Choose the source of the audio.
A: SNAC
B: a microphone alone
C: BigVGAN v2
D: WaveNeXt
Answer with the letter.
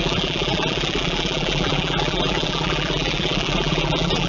C